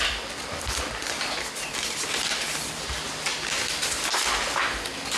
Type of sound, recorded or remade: recorded